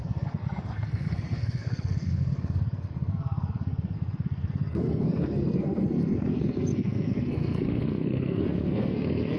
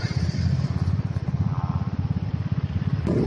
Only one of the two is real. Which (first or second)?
second